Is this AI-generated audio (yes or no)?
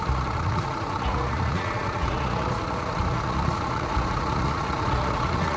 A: yes